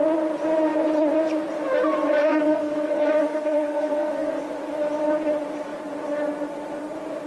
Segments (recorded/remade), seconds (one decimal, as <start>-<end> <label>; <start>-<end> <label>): 0.0-2.2 recorded; 2.2-4.3 remade; 4.3-7.3 recorded